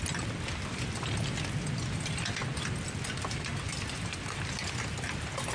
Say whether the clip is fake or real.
real